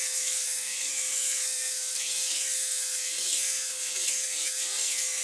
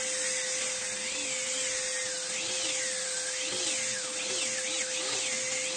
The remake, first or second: first